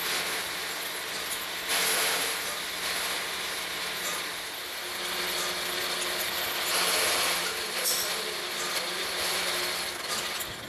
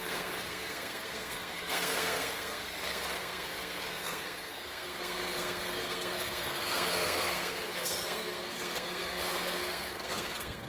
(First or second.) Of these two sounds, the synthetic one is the second